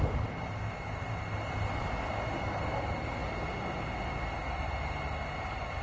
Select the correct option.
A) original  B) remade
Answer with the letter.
A